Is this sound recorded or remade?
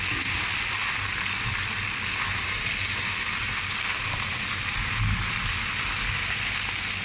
recorded